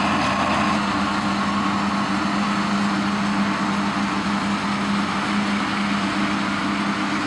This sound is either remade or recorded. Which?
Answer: recorded